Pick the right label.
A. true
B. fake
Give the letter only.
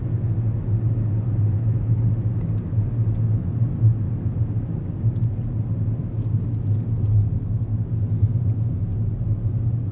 A